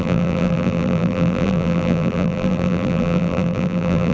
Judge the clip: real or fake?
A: fake